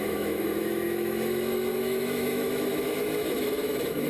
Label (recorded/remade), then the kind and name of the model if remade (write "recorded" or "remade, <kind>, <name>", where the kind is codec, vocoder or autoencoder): remade, autoencoder, DAC-VAE